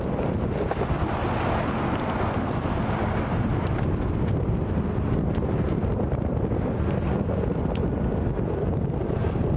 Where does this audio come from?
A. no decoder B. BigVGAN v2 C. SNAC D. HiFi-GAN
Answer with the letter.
A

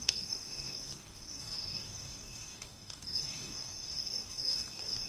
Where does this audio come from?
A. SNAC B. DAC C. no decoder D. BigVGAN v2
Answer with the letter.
B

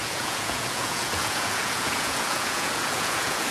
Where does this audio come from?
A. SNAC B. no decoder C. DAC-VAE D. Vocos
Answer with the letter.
D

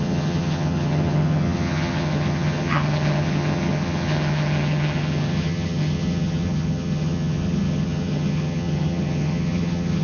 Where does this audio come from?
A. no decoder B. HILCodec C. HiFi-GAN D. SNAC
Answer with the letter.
C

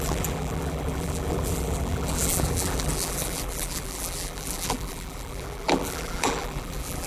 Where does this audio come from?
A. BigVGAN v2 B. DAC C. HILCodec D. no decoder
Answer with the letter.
A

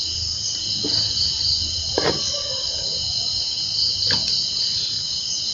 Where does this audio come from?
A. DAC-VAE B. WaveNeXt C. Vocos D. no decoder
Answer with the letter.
D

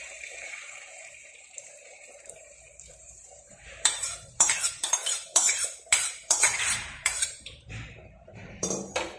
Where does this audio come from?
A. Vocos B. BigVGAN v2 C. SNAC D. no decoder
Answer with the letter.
B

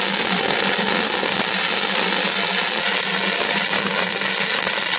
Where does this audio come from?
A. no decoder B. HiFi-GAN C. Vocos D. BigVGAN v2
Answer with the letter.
A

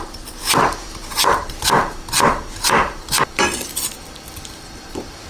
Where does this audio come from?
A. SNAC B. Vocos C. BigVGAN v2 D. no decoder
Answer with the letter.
C